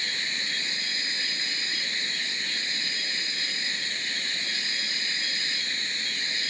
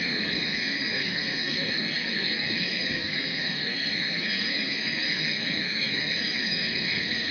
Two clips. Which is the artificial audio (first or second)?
second